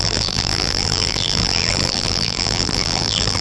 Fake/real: fake